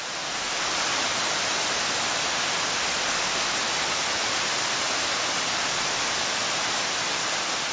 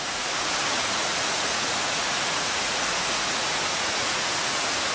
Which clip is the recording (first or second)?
first